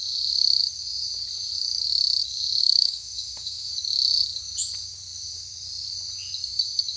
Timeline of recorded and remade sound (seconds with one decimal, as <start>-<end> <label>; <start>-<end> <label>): 0.0-2.6 recorded; 2.6-3.7 remade; 3.7-7.0 recorded